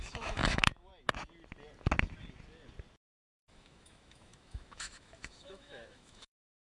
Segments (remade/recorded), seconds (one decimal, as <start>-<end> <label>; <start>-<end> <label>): 0.0-0.9 remade; 0.9-3.3 recorded; 3.3-6.8 remade